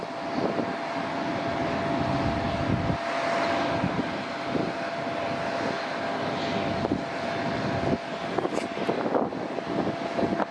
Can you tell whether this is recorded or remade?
recorded